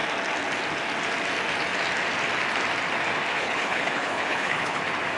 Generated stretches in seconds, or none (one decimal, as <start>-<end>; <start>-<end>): 3.3-4.8